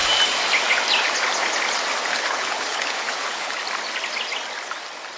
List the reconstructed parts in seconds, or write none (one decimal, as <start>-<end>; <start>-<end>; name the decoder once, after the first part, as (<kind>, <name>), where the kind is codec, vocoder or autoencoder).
2.1-3.6 (codec, HILCodec)